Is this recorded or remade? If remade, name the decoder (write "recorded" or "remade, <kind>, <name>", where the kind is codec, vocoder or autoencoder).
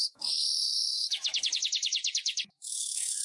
remade, autoencoder, DAC-VAE